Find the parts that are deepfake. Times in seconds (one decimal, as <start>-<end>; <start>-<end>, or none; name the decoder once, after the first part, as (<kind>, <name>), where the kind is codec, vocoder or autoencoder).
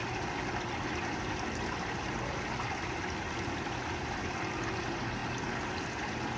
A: none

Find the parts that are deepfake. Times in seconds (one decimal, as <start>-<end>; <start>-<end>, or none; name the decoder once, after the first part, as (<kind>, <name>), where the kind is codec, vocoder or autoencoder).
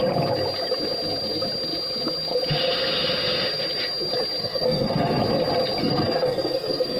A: 4.4-5.2 (codec, SNAC); 5.8-7.0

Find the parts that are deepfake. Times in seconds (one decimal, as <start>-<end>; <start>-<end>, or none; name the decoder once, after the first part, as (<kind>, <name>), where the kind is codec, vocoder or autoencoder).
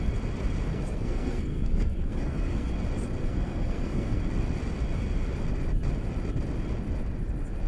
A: 0.7-2.7 (codec, SNAC); 3.2-4.2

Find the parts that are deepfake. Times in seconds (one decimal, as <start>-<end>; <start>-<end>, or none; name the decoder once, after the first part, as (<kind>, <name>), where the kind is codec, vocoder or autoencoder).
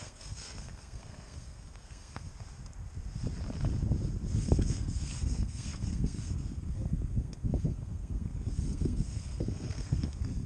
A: 0.0-2.3 (codec, SNAC); 4.3-10.5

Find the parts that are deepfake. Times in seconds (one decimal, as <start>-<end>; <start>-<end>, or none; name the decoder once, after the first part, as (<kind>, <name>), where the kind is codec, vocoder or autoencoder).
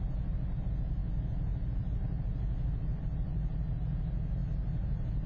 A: none